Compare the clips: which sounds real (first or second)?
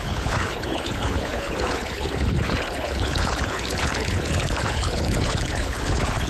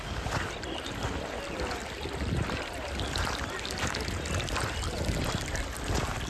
second